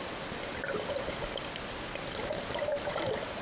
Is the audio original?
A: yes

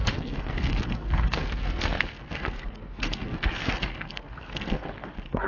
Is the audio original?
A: no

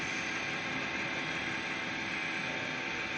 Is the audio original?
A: yes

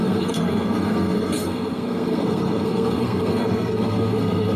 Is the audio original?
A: no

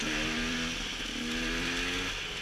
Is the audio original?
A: yes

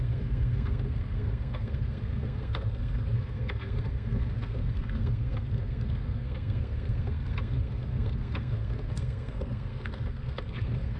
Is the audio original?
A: no